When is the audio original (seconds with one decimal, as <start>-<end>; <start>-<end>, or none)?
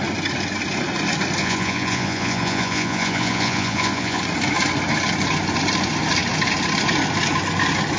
0.0-1.4; 4.2-8.0